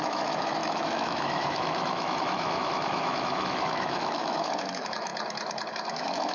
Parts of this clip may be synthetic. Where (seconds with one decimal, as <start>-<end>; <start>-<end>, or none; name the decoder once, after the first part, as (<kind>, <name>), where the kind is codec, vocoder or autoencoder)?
0.0-5.1 (autoencoder, DAC-VAE); 5.7-6.3